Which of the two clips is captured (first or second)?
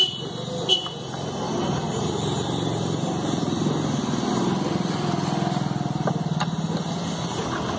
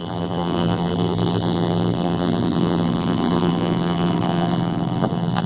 first